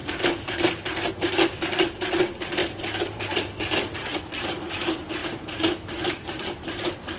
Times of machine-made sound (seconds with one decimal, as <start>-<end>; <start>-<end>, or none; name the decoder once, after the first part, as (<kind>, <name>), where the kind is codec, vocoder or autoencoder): 0.0-1.1 (vocoder, BigVGAN v2); 2.6-4.2; 5.2-7.2